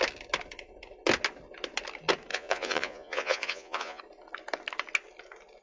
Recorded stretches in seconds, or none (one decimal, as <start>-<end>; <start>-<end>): 0.0-2.3; 4.0-5.6